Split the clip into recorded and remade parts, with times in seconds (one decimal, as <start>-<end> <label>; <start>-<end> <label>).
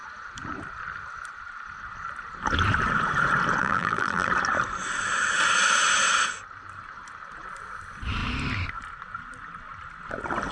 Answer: 0.0-3.6 recorded; 3.6-4.3 remade; 4.3-10.5 recorded